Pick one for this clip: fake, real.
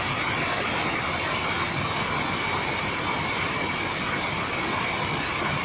real